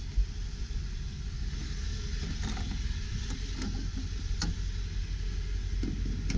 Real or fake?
real